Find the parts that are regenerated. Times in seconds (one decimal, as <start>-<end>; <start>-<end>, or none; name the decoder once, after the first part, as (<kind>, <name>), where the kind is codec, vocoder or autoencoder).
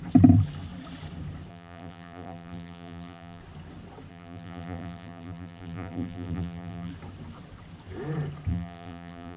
1.5-3.4 (vocoder, BigVGAN v2); 4.1-6.9; 8.5-9.4